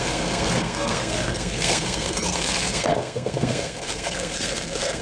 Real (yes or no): no